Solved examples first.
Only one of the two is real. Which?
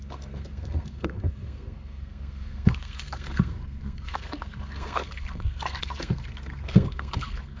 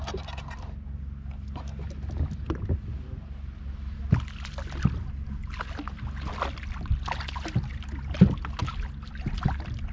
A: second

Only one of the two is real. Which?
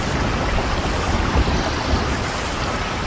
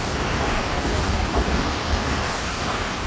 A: first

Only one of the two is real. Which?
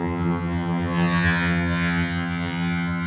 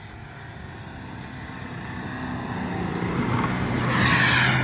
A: second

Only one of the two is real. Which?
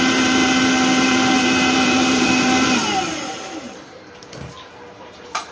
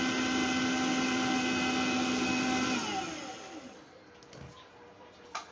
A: second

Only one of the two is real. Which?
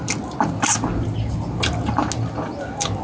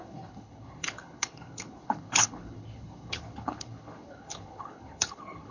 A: first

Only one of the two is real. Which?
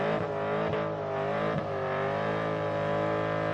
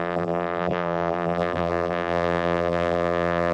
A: first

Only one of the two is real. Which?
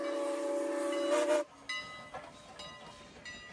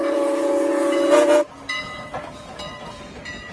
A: first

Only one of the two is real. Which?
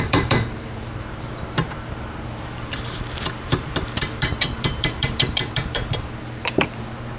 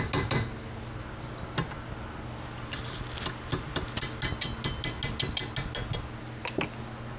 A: second